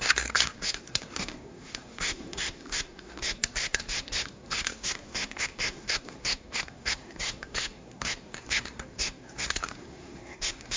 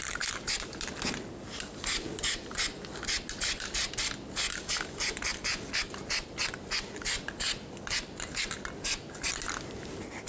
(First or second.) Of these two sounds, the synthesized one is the first